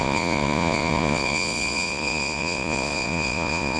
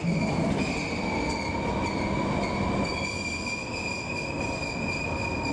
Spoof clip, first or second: first